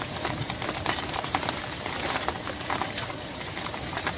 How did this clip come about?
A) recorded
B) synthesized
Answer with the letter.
B